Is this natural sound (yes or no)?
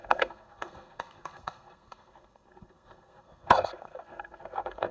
no